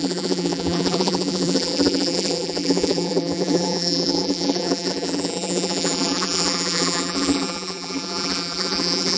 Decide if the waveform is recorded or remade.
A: remade